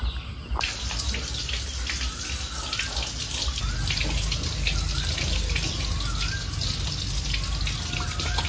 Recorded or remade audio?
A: recorded